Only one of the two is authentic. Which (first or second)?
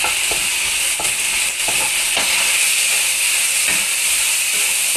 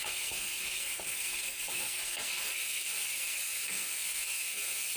first